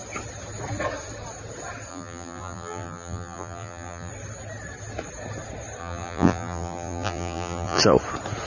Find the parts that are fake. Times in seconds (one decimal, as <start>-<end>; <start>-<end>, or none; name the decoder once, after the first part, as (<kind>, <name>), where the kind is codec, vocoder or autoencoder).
1.9-4.1 (vocoder, BigVGAN v2); 5.8-7.8